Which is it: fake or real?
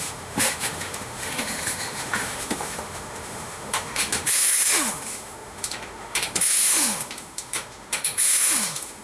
fake